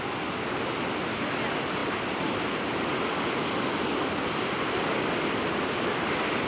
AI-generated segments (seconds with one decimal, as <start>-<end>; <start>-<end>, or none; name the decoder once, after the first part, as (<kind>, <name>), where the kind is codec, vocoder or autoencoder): none

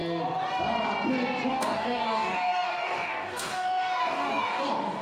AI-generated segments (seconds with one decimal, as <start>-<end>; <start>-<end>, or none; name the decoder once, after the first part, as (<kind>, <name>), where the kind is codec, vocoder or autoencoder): 1.5-5.0 (codec, DAC)

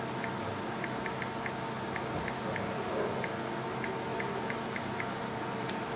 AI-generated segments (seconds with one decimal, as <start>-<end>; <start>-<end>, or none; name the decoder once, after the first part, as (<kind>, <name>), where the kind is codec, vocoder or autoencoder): 4.1-6.0 (vocoder, BigVGAN v2)